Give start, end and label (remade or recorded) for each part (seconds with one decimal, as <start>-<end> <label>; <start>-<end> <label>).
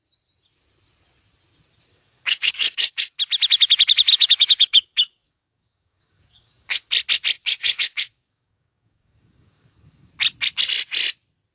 0.0-1.9 recorded; 1.9-3.2 remade; 3.2-4.1 recorded; 4.1-6.9 remade; 6.9-7.4 recorded; 7.4-10.1 remade; 10.1-11.5 recorded